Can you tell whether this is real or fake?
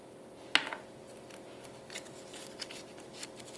real